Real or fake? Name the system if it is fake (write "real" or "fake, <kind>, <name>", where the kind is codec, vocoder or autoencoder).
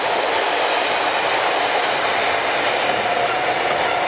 real